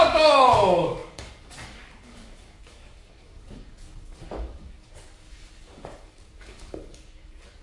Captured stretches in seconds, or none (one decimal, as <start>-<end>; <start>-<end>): none